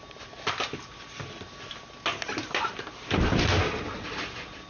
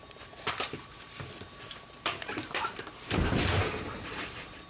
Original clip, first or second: first